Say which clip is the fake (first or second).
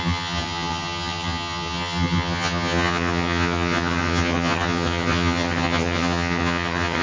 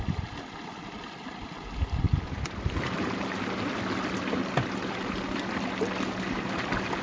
first